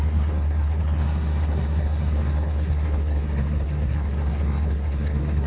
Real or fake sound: fake